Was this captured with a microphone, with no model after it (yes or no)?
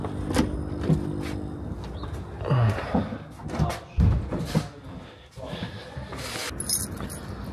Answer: yes